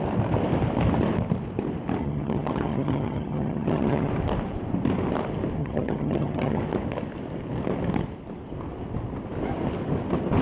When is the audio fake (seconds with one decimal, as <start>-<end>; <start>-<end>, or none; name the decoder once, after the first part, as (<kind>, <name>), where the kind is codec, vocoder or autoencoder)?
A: 2.0-4.1 (vocoder, HiFi-GAN); 5.6-6.6